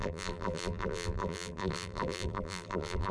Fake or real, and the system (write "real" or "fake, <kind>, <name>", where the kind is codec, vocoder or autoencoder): fake, vocoder, BigVGAN v2